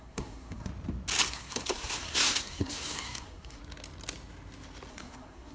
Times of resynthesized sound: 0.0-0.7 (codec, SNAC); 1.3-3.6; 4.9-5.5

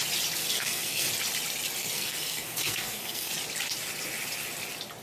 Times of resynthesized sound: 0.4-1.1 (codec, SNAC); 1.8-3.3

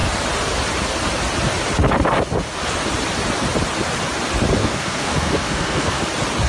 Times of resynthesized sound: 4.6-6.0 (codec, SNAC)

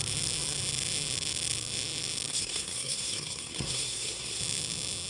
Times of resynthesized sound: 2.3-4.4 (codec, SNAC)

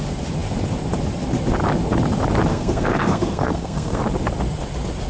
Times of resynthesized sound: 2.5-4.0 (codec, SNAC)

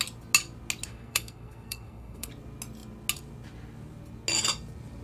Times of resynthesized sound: 0.9-2.3 (codec, SNAC)

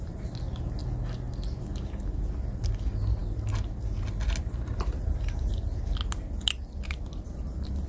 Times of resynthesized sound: none

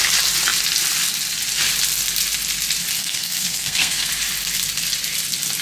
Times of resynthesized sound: 3.0-4.1 (codec, SNAC)